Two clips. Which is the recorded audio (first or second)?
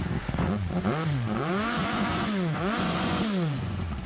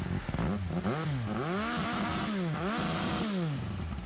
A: second